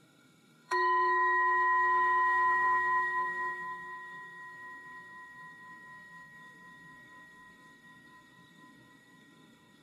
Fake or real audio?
fake